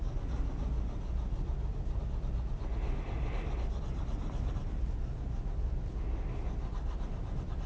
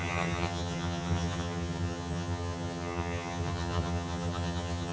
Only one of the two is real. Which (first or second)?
first